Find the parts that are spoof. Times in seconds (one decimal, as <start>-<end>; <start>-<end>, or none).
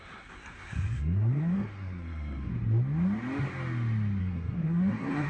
0.0-2.5; 4.2-5.3